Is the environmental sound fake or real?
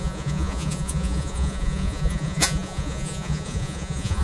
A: fake